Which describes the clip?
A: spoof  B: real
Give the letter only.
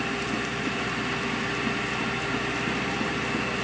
A